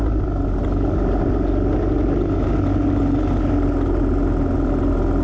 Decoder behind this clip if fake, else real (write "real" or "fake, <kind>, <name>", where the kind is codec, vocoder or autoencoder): real